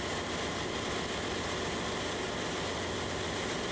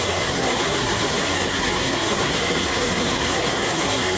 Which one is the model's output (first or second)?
second